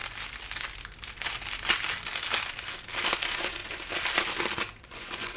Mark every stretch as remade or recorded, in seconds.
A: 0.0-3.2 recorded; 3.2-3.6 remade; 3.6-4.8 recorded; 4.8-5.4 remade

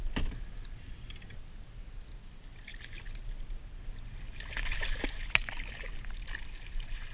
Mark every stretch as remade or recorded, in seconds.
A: 0.0-7.1 recorded

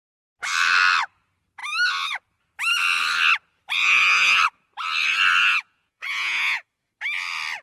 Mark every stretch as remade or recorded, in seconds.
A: 0.0-3.8 recorded; 3.8-4.4 remade; 4.4-5.4 recorded; 5.4-6.7 remade; 6.7-7.6 recorded

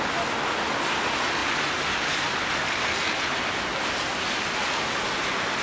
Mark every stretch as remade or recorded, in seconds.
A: 0.0-5.6 recorded